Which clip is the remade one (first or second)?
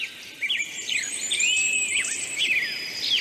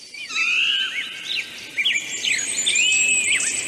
first